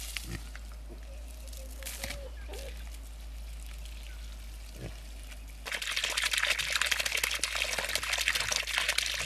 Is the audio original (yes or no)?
yes